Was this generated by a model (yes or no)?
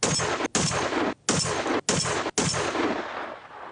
no